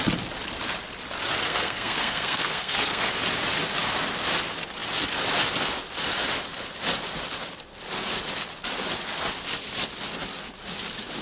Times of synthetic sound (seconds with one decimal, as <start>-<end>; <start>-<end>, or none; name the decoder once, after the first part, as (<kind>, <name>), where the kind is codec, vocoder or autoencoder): 1.5-3.1 (codec, SNAC)